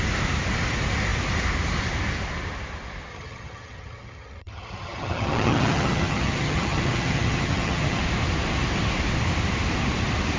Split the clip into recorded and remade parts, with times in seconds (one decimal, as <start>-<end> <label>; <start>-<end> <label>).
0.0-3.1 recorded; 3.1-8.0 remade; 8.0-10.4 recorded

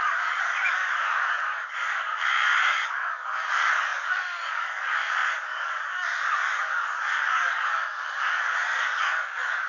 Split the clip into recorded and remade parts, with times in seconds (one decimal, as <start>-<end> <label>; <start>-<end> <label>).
0.0-9.7 remade

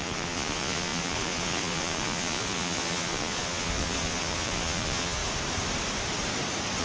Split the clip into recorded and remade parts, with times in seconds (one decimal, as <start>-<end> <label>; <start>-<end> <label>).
0.0-5.2 remade; 5.2-6.8 recorded

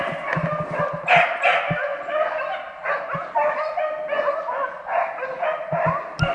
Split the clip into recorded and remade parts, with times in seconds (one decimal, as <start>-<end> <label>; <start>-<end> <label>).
0.0-6.3 recorded